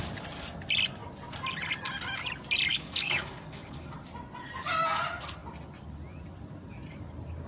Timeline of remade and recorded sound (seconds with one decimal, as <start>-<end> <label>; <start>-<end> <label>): 0.0-2.7 recorded; 2.7-3.9 remade; 3.9-7.5 recorded